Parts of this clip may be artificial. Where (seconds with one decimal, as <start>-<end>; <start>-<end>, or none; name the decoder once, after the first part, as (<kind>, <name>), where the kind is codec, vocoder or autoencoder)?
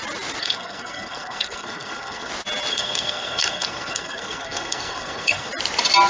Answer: 0.4-2.3 (codec, SNAC); 2.7-5.5